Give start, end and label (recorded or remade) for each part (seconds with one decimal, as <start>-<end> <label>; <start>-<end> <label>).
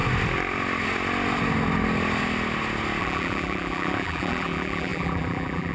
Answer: 0.0-3.0 recorded; 3.0-5.7 remade